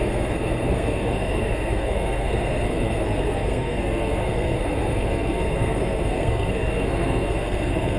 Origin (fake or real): fake